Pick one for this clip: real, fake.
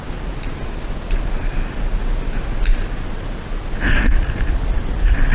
real